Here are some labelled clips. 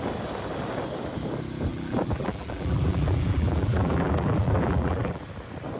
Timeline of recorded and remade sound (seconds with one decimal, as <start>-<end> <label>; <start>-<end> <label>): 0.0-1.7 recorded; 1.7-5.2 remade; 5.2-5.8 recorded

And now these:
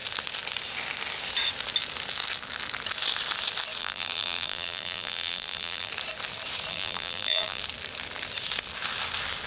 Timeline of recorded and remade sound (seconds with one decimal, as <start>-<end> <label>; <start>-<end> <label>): 0.0-3.8 recorded; 3.8-5.9 remade; 5.9-6.7 recorded; 6.7-7.6 remade; 7.6-9.5 recorded

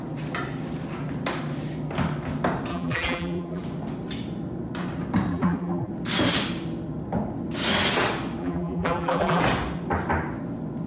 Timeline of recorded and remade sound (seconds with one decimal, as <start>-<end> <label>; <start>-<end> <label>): 0.0-2.7 recorded; 2.7-3.6 remade; 3.6-5.3 recorded; 5.3-5.9 remade; 5.9-8.4 recorded; 8.4-9.4 remade; 9.4-10.9 recorded